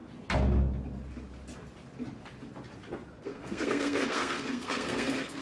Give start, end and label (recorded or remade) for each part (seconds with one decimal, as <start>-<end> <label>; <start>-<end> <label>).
0.0-3.2 recorded; 3.2-5.4 remade